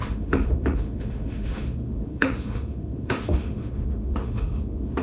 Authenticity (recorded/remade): remade